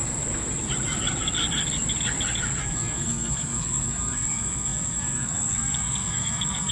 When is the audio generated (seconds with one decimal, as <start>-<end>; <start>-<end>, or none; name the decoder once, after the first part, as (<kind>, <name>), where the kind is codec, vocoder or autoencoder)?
2.6-6.7 (codec, SNAC)